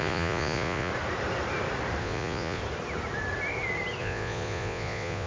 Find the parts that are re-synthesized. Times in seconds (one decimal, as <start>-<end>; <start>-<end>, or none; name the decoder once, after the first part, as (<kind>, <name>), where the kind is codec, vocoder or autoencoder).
0.0-0.9 (vocoder, Vocos); 2.0-2.6; 4.0-5.3